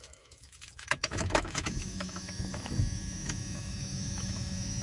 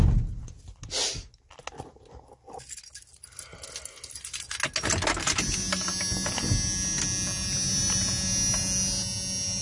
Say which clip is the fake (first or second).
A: first